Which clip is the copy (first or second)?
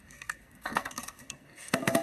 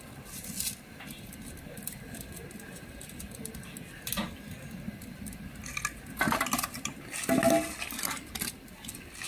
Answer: first